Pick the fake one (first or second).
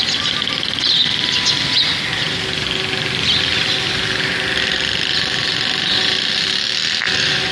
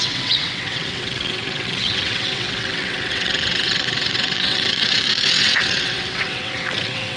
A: second